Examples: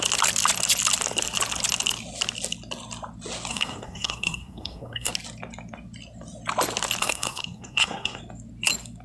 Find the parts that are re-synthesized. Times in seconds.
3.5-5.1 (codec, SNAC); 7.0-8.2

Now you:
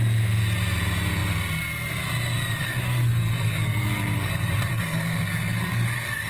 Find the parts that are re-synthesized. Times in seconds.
2.6-4.3 (codec, SNAC); 4.7-6.3

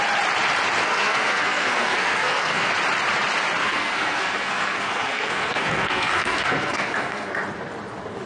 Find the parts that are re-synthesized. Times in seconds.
0.8-2.7 (codec, SNAC); 3.6-7.4

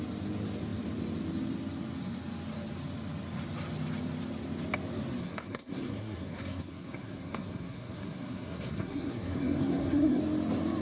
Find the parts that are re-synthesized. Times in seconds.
5.2-10.2 (codec, SNAC)

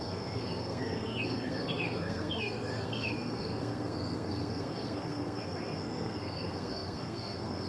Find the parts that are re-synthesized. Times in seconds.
0.0-7.7 (codec, SNAC)

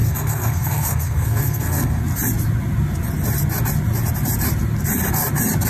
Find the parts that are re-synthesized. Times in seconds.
0.0-2.0 (codec, SNAC)